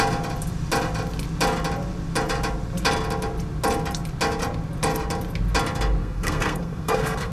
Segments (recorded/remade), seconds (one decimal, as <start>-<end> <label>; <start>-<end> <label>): 0.0-6.0 recorded; 6.0-7.3 remade